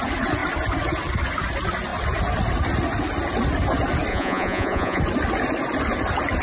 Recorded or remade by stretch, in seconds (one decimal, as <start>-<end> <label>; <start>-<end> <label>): 0.0-4.1 recorded; 4.1-5.0 remade; 5.0-6.4 recorded